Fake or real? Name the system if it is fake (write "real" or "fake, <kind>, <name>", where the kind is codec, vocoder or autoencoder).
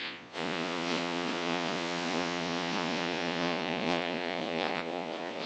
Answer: fake, vocoder, Vocos